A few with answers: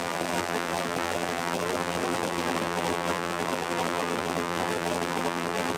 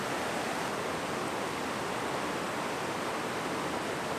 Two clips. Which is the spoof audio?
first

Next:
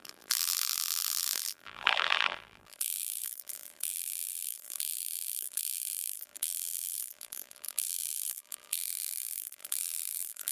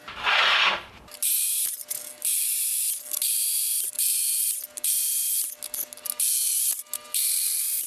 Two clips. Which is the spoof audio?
first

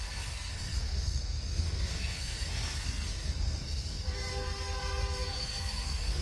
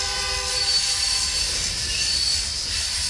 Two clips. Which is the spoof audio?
first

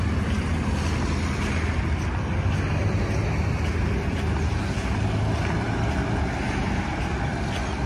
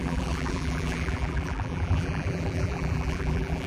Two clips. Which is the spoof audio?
second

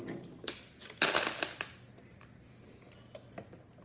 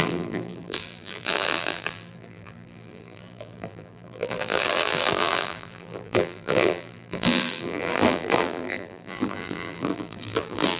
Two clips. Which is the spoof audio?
second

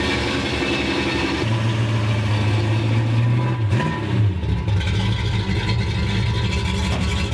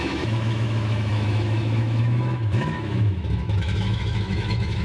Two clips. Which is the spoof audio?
second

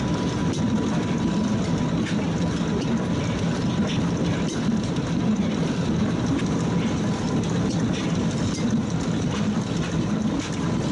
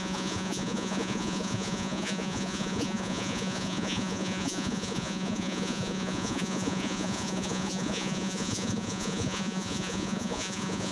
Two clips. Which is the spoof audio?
second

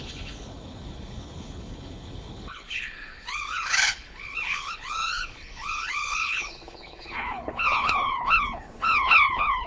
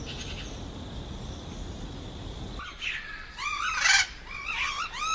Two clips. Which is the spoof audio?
first